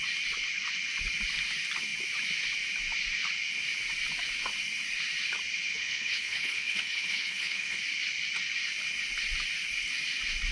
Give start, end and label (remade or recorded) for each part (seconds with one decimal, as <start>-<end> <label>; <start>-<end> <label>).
0.0-5.7 recorded; 5.7-7.8 remade; 7.8-10.5 recorded